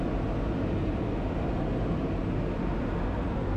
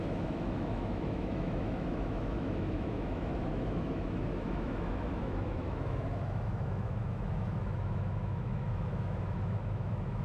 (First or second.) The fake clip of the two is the second